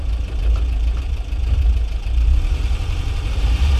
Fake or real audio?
fake